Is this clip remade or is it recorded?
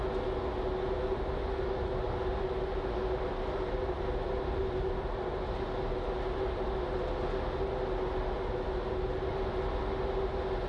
recorded